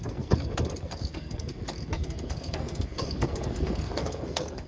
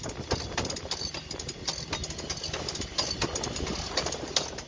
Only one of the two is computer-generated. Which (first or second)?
first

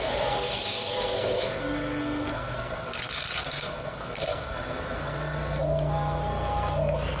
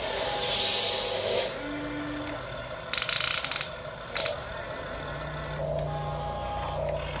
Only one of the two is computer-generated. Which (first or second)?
first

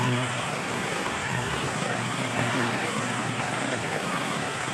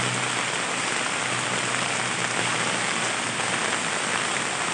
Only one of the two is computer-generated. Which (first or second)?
first